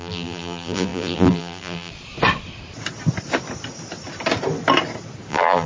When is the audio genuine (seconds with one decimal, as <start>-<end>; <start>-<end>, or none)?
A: 1.9-5.3